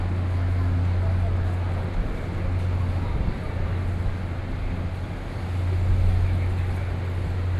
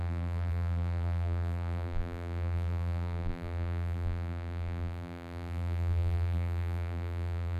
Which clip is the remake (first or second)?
second